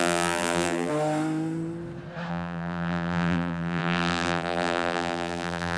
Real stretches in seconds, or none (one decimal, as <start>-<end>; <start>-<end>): 0.9-2.3